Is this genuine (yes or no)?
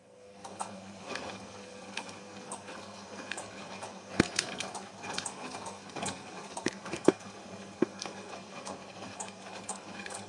no